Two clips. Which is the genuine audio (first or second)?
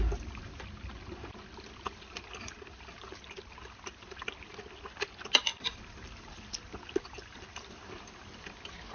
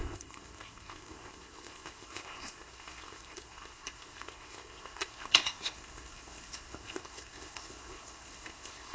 first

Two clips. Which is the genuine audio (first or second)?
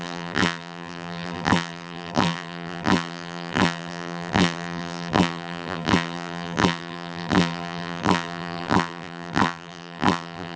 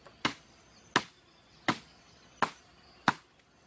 second